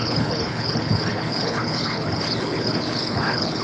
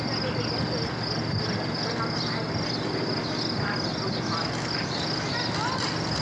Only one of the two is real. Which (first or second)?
second